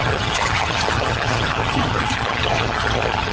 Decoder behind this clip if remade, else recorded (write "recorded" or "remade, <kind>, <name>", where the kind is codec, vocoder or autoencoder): remade, vocoder, HiFi-GAN